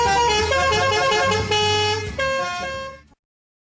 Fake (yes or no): no